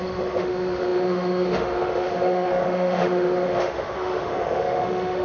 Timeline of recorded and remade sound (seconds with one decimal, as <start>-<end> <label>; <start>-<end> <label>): 0.0-5.2 remade